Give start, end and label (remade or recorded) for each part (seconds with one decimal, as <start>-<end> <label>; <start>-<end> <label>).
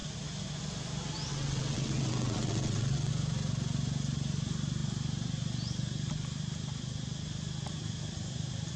0.0-1.3 recorded; 1.3-3.1 remade; 3.1-8.8 recorded